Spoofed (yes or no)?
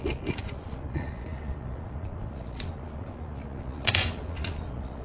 yes